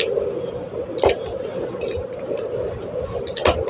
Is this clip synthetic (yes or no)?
no